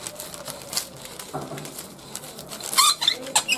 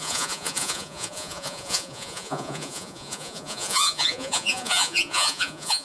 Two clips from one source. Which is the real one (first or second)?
first